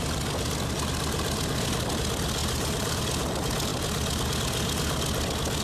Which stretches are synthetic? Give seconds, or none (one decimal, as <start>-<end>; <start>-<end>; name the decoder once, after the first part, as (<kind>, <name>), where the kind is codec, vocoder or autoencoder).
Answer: 2.4-3.0 (vocoder, BigVGAN v2)